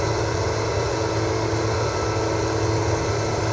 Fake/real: real